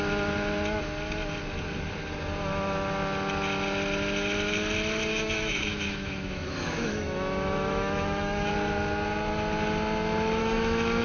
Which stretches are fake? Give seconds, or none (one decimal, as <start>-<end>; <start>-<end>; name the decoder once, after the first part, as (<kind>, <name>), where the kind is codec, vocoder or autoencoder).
5.1-8.5 (autoencoder, DAC-VAE); 10.4-11.0